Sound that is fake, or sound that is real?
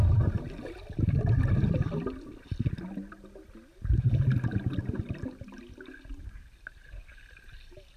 real